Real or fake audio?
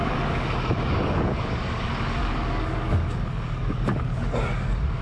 fake